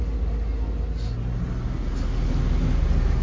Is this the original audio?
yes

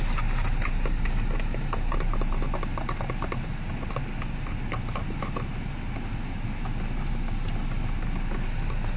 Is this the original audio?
yes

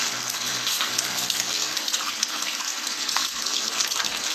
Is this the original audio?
no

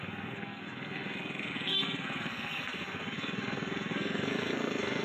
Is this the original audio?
no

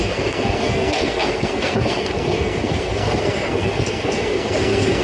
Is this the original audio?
no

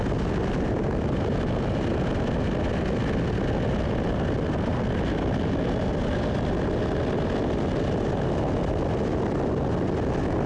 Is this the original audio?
yes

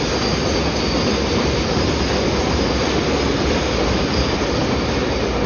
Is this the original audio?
yes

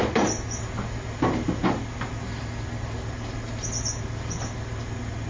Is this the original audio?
yes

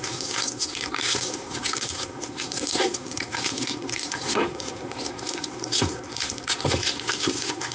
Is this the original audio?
no